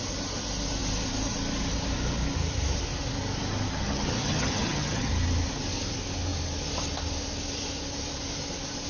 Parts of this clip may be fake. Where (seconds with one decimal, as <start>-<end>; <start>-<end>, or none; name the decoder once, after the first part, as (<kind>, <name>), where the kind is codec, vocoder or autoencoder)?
3.7-5.1 (vocoder, HiFi-GAN)